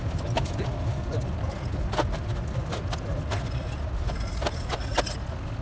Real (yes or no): yes